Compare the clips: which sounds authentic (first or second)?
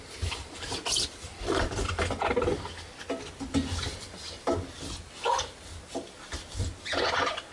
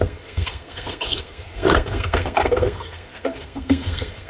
first